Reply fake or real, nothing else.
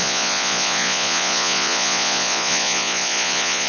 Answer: fake